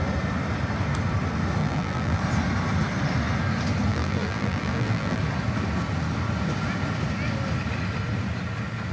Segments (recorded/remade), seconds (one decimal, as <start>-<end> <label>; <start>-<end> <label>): 0.0-1.6 recorded; 1.6-2.2 remade; 2.2-3.9 recorded; 3.9-5.2 remade; 5.2-8.9 recorded